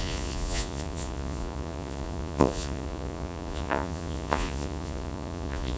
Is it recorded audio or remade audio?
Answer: remade